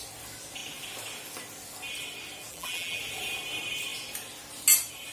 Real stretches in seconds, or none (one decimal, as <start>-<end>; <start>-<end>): 0.0-2.5; 3.0-5.1